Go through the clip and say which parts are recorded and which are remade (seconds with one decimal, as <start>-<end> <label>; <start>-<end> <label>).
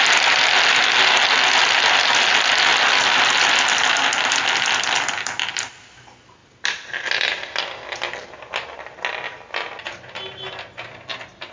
0.0-6.4 recorded; 6.4-7.6 remade; 7.6-11.5 recorded